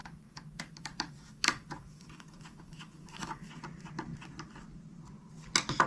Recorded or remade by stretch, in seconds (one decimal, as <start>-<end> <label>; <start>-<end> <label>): 0.0-3.5 remade; 3.5-5.9 recorded